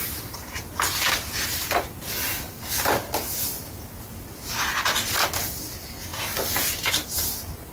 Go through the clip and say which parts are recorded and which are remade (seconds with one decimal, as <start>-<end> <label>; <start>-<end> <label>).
0.0-0.6 remade; 0.6-7.7 recorded